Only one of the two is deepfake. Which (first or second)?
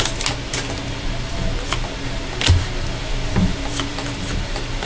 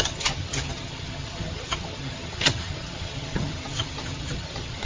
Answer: second